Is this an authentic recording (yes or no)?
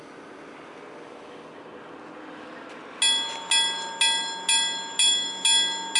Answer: yes